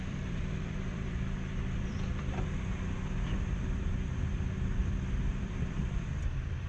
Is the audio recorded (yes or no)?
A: no